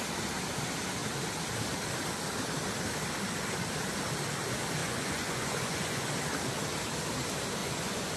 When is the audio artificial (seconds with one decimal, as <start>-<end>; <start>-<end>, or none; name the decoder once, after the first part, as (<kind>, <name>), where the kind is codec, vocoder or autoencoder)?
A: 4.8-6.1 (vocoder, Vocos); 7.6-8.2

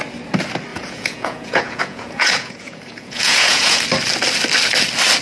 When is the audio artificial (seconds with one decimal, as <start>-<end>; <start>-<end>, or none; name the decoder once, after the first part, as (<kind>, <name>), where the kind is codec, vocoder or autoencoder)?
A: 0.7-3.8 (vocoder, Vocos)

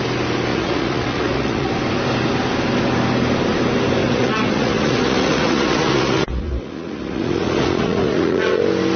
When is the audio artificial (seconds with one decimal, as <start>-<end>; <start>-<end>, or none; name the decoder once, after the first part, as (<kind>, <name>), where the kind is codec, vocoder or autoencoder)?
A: 0.5-1.7 (vocoder, Vocos); 4.0-8.6

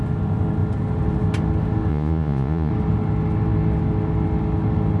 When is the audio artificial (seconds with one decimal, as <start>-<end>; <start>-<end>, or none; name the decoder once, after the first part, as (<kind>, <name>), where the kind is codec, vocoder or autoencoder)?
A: 1.9-2.7 (vocoder, Vocos)

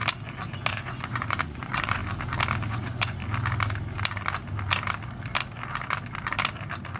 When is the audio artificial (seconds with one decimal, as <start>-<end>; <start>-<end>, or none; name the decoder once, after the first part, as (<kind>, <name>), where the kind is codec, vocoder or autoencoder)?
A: 0.7-2.0 (vocoder, Vocos); 2.7-3.2

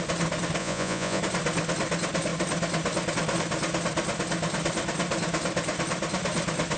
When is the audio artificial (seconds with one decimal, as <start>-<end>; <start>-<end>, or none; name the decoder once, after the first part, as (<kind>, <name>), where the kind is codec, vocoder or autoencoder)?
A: 0.6-1.2 (vocoder, Vocos)

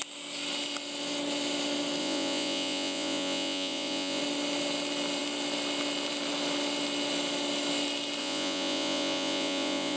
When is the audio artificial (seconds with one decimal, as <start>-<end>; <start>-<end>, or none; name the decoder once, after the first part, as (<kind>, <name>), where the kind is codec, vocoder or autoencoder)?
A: 2.0-4.2 (vocoder, Vocos); 8.2-10.0